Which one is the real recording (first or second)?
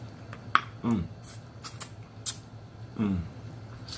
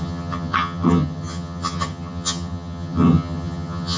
first